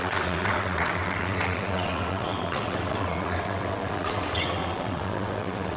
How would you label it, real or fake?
fake